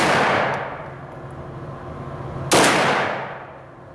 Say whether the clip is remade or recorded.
recorded